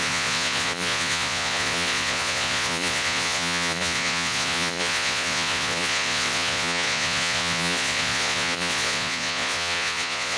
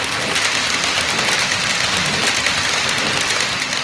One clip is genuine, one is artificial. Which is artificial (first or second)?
first